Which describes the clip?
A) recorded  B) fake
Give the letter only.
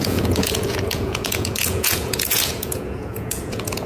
B